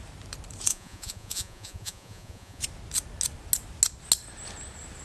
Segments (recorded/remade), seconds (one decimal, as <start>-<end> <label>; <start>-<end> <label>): 0.0-0.7 recorded; 0.7-2.6 remade; 2.6-5.0 recorded